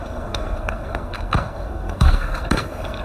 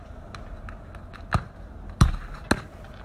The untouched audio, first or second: second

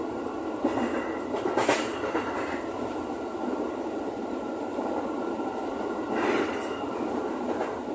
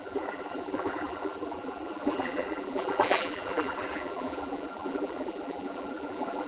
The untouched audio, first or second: first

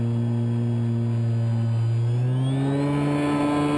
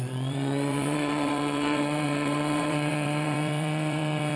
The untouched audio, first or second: first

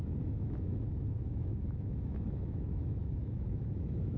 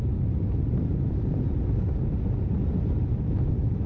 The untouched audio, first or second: second